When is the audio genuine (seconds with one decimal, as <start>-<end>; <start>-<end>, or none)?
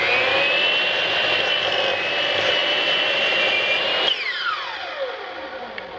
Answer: 0.0-2.6; 3.9-6.0